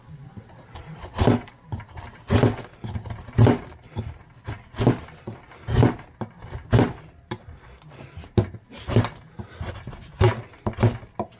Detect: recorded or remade recorded